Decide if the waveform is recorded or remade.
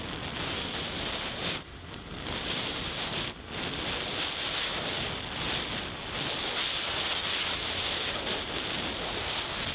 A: recorded